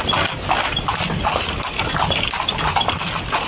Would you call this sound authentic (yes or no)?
yes